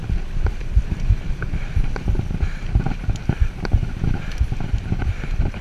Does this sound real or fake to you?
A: fake